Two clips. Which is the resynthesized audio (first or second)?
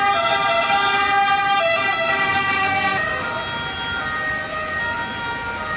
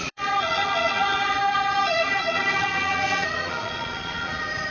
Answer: second